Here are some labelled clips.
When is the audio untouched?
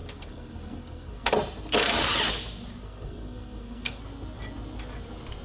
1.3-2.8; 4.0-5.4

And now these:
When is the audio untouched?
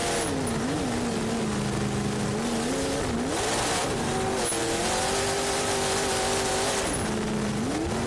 0.0-8.1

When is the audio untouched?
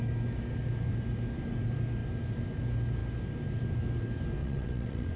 0.0-4.4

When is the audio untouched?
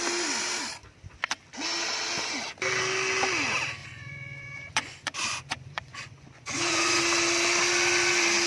0.0-3.8; 7.0-8.5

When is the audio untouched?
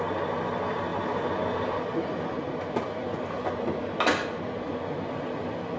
0.0-5.8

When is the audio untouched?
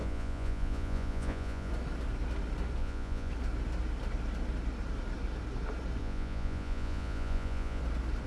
1.7-2.8; 3.3-6.0; 7.8-8.3